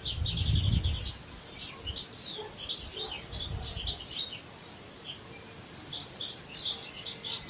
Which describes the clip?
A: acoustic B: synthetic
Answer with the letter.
A